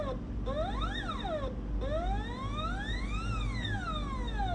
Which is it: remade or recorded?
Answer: recorded